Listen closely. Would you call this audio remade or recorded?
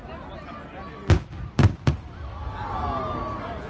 recorded